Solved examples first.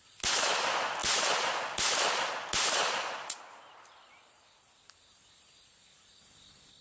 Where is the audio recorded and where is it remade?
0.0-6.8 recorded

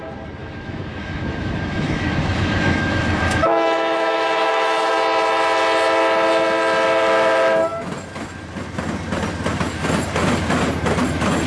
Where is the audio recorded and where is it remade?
0.0-0.4 recorded; 0.4-4.9 remade; 4.9-11.5 recorded

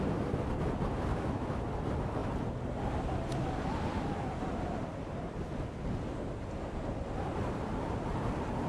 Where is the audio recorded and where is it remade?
0.0-1.1 recorded; 1.1-1.6 remade; 1.6-8.7 recorded

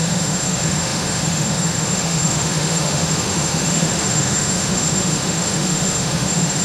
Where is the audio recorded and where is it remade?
0.0-6.6 remade

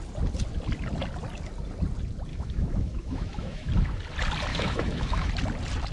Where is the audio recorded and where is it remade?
0.0-2.3 recorded; 2.3-3.7 remade; 3.7-4.5 recorded; 4.5-5.3 remade; 5.3-5.9 recorded